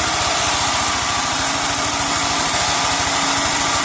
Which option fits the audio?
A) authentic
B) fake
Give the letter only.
A